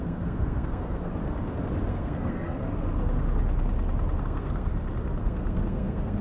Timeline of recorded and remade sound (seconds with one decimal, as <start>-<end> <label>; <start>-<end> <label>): 0.0-1.2 remade; 1.2-1.9 recorded; 1.9-2.7 remade; 2.7-4.2 recorded; 4.2-4.7 remade; 4.7-5.2 recorded; 5.2-6.2 remade